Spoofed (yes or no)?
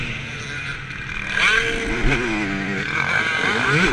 no